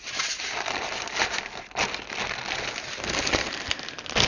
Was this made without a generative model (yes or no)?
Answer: yes